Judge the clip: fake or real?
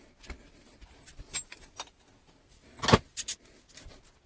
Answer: real